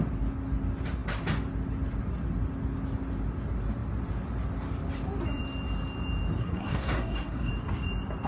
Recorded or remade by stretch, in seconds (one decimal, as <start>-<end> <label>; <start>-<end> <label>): 0.0-6.4 recorded; 6.4-7.5 remade; 7.5-8.3 recorded